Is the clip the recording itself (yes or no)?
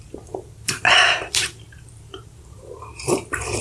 no